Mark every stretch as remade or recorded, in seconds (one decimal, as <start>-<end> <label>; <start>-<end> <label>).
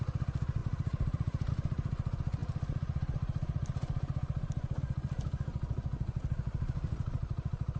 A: 0.0-0.6 recorded; 0.6-1.5 remade; 1.5-2.4 recorded; 2.4-4.8 remade; 4.8-6.2 recorded; 6.2-7.8 remade